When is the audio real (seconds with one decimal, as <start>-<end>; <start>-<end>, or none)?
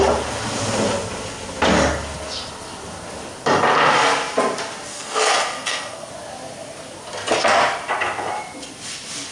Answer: 0.0-4.9; 6.1-9.3